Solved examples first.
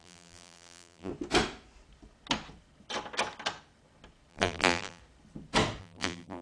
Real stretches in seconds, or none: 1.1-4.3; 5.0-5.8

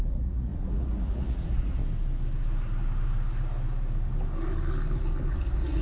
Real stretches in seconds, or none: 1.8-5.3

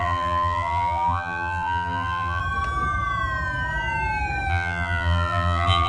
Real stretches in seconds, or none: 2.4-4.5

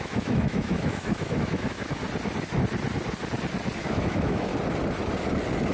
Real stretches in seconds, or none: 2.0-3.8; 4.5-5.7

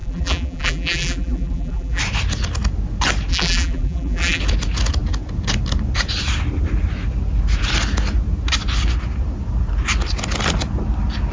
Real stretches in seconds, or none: 2.0-3.3; 4.4-11.3

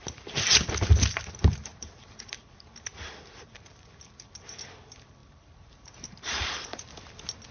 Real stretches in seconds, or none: 0.0-1.7; 2.4-5.2; 7.1-7.5

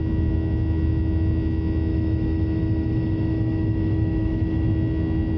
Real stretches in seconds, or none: 0.0-1.9; 4.7-5.4

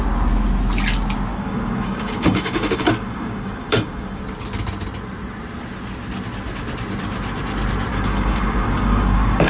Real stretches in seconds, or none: 0.0-1.3; 4.2-7.9